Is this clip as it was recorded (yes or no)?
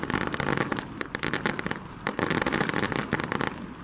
yes